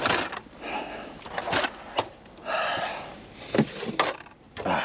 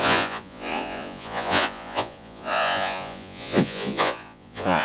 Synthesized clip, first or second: second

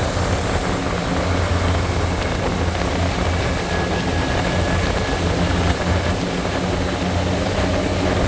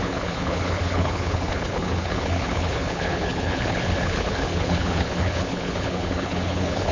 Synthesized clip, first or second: second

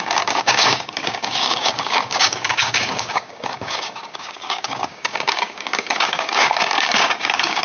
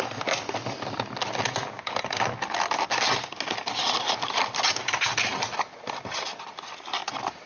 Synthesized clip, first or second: first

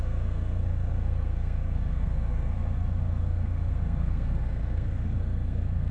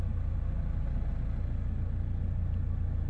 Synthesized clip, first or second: first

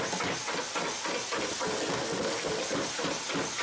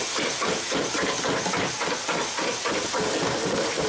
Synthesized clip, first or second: second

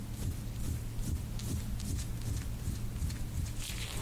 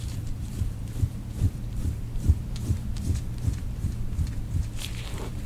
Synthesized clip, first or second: second